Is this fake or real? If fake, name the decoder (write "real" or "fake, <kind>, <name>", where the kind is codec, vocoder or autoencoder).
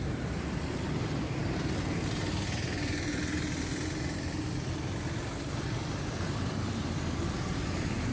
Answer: real